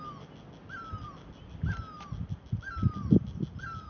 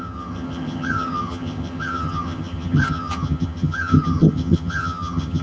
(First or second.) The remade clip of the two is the second